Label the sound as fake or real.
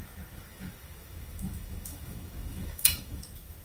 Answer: fake